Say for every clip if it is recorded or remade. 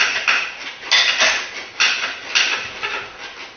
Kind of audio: recorded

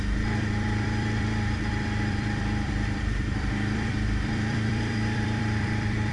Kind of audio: remade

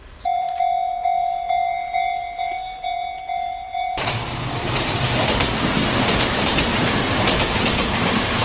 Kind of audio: remade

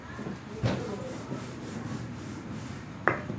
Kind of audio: remade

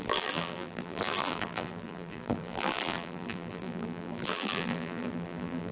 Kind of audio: remade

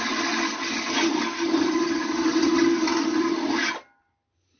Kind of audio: recorded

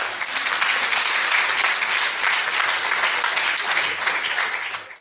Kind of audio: recorded